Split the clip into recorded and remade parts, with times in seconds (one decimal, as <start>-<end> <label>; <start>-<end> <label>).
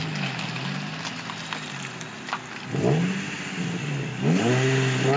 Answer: 0.0-3.8 recorded; 3.8-4.5 remade; 4.5-5.2 recorded